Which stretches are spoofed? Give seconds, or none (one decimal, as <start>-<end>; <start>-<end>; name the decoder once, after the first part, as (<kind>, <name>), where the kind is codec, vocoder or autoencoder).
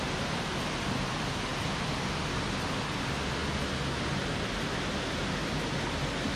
none